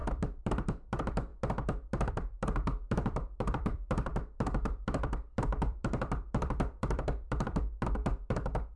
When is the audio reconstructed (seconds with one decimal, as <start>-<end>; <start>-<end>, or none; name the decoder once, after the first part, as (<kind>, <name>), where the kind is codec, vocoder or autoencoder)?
0.0-1.3 (vocoder, BigVGAN v2); 2.1-8.8